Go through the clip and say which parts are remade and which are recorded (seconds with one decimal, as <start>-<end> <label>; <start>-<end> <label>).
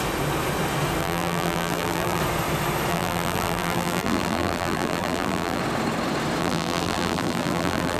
0.0-1.0 recorded; 1.0-2.2 remade; 2.2-2.9 recorded; 2.9-5.6 remade; 5.6-6.4 recorded; 6.4-8.0 remade